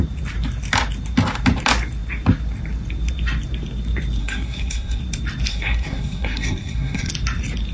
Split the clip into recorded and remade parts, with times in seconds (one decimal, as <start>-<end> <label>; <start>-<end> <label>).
0.0-4.2 recorded; 4.2-5.0 remade; 5.0-5.5 recorded; 5.5-7.1 remade; 7.1-7.7 recorded